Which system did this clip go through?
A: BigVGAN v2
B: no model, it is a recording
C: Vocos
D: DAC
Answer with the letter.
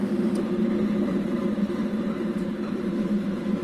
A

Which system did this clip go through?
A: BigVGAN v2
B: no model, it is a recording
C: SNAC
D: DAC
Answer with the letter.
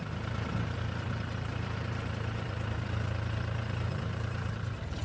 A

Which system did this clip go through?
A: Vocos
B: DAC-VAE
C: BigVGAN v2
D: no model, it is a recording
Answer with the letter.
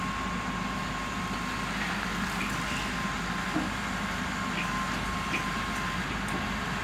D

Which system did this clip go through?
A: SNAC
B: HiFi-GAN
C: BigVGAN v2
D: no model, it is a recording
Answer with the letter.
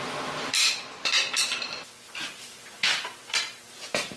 C